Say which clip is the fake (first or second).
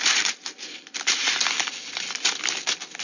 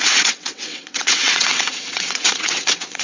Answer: second